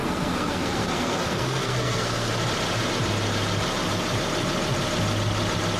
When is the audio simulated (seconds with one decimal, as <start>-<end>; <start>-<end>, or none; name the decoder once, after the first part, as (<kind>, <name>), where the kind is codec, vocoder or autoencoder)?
0.0-2.3 (codec, SNAC)